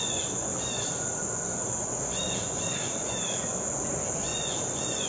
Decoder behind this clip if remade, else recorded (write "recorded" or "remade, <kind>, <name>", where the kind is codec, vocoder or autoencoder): remade, vocoder, Vocos